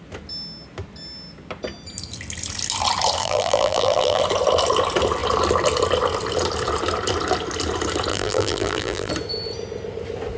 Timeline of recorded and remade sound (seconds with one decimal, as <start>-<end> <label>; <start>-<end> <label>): 0.0-3.2 recorded; 3.2-4.2 remade; 4.2-8.1 recorded; 8.1-9.1 remade; 9.1-10.4 recorded